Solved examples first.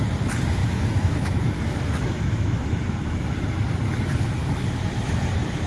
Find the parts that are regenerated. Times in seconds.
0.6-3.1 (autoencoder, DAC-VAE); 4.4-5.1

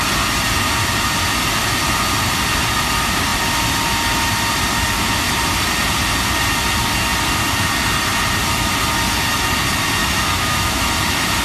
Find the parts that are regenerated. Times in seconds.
10.0-10.8 (autoencoder, DAC-VAE)

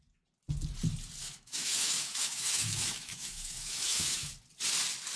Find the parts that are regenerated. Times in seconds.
1.2-4.3 (autoencoder, DAC-VAE)

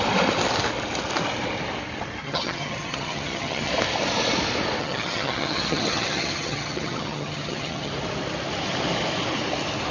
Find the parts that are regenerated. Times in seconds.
2.2-3.7 (vocoder, HiFi-GAN); 4.8-7.9

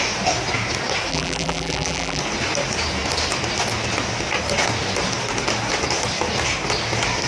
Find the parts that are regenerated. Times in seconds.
1.1-2.2 (vocoder, BigVGAN v2)

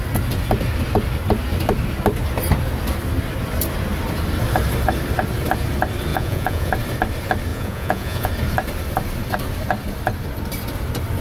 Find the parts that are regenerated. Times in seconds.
6.1-6.7 (vocoder, Vocos); 7.5-8.3